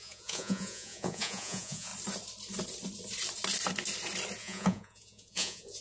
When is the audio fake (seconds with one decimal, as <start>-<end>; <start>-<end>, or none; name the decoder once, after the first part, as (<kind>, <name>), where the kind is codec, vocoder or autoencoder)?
0.0-1.9 (vocoder, Vocos); 4.4-5.8